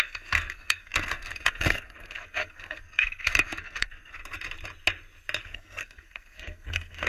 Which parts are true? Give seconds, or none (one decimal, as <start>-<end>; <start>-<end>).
4.2-5.4

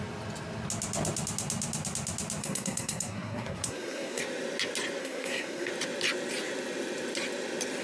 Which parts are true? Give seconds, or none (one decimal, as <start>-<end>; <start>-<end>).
0.0-2.4; 4.2-5.0; 5.7-7.8

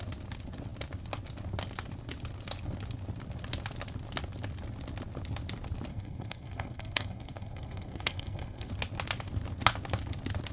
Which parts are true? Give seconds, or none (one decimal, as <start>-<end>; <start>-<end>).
0.0-5.9; 8.7-10.5

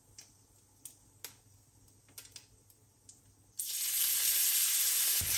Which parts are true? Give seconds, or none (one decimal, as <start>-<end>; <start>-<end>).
0.0-5.4

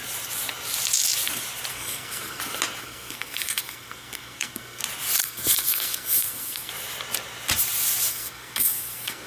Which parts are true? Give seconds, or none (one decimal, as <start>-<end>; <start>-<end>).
0.0-1.7; 2.4-2.8; 4.8-5.2; 6.7-8.1

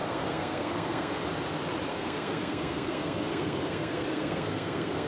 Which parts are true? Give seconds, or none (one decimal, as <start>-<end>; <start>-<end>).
1.2-1.9

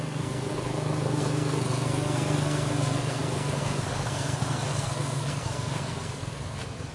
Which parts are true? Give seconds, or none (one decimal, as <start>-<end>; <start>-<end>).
none